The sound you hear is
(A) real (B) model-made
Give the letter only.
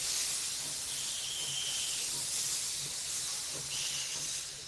A